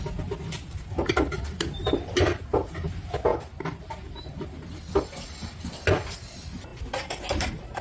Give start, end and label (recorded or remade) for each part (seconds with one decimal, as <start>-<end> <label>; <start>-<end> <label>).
0.0-7.8 recorded